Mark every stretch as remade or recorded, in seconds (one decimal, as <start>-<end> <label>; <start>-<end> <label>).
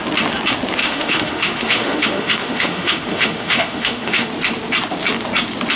0.0-0.8 recorded; 0.8-4.3 remade; 4.3-5.8 recorded